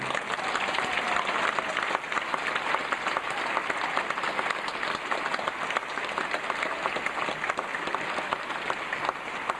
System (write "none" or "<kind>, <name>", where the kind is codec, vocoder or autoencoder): none